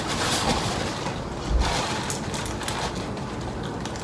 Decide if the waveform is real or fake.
real